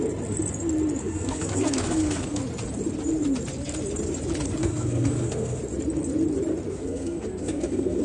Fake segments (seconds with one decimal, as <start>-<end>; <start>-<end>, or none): 1.0-2.4; 4.6-5.6; 6.7-8.0

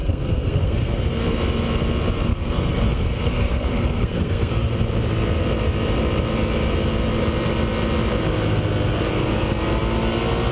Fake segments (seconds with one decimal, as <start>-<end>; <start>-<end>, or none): 0.0-1.0; 2.3-4.8

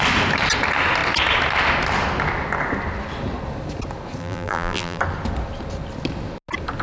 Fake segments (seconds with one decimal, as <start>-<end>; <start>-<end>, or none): 4.2-5.0

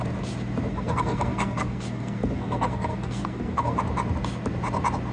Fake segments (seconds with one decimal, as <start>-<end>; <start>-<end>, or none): 0.7-3.8

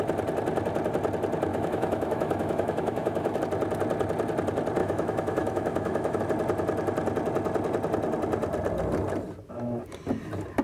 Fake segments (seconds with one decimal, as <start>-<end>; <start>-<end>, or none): 1.5-3.4; 4.8-6.2

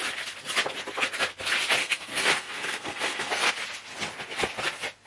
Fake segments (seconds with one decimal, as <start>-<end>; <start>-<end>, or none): 1.8-3.5

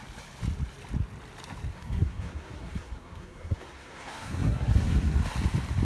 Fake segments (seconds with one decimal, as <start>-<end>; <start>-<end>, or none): 1.7-5.2